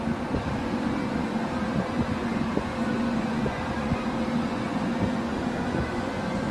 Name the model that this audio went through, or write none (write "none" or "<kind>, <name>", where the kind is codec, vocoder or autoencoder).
vocoder, Vocos